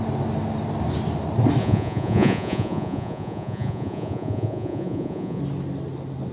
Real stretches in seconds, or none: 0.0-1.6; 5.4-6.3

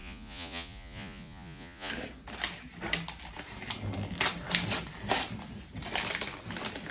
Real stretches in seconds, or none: 1.9-6.9

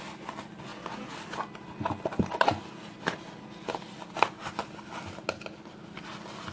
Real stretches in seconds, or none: 0.0-6.5

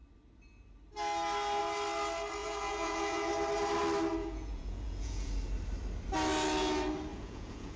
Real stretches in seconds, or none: 0.0-2.4; 3.3-4.2; 5.3-7.1

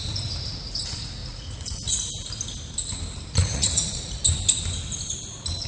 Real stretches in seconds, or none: 0.0-1.2; 2.1-3.4; 4.2-5.7

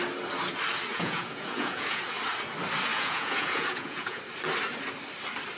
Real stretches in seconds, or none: 0.0-0.9; 2.0-2.9; 4.2-5.6

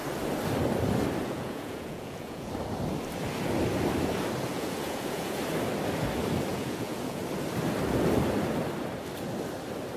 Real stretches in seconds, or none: 0.0-1.2; 2.5-4.5; 5.4-6.5; 7.2-10.0

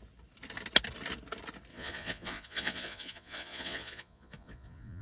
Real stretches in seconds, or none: 0.0-1.7